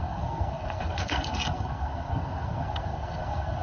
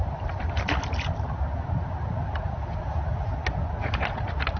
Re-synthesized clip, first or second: first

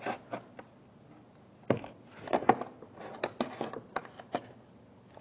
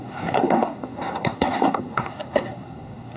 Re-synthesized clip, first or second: second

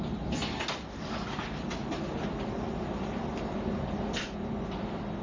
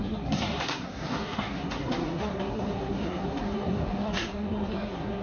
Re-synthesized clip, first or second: second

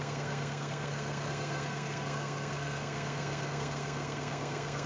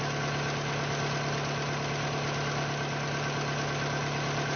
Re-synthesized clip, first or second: first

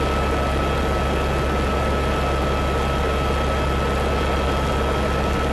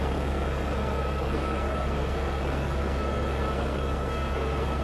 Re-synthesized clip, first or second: second